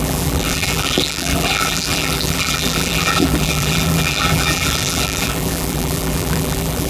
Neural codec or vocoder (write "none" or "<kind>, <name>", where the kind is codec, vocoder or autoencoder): vocoder, BigVGAN v2